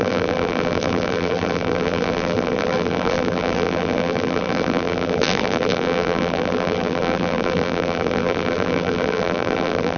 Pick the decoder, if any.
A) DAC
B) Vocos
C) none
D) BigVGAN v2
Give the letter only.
D